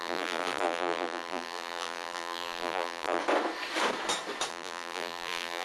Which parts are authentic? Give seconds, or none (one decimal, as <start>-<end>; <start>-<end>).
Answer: 3.2-4.5